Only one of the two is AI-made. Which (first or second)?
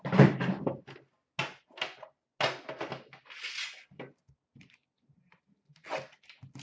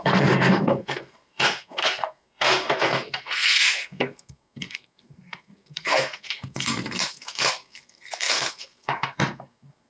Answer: second